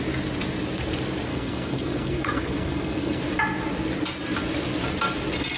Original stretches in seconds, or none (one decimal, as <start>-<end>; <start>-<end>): 0.0-1.3; 3.2-5.6